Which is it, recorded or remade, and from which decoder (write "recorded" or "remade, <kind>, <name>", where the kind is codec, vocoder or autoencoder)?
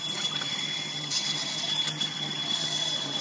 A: remade, vocoder, HiFi-GAN